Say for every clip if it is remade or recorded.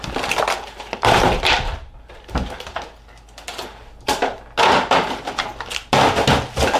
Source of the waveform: recorded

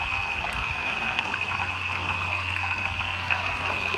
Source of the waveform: remade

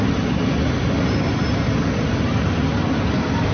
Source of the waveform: recorded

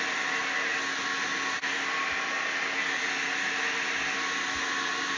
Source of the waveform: recorded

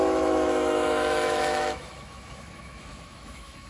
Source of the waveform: remade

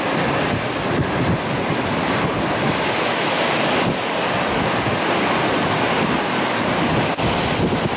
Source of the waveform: recorded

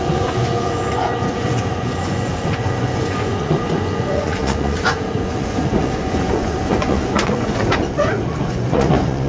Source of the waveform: remade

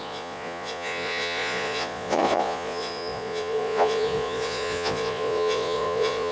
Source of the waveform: remade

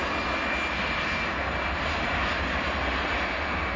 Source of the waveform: recorded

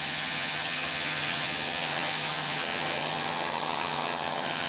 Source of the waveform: remade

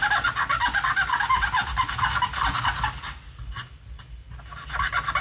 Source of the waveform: recorded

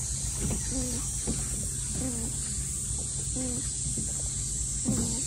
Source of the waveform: recorded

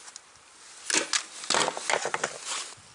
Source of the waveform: recorded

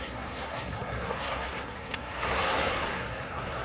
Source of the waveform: remade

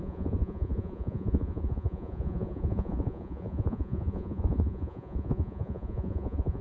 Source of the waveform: remade